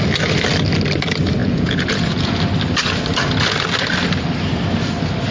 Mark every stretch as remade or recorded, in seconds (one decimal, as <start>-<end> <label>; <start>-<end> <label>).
0.0-1.4 recorded; 1.4-2.4 remade; 2.4-5.3 recorded